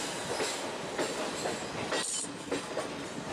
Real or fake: real